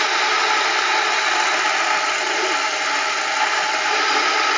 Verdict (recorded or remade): recorded